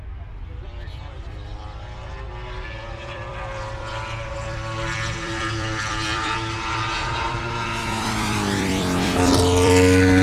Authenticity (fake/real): fake